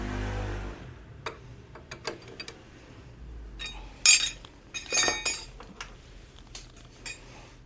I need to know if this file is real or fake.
real